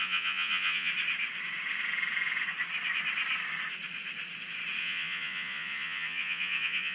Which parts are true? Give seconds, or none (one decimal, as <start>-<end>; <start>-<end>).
0.9-4.8